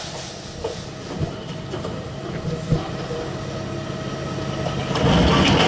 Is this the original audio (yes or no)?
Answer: yes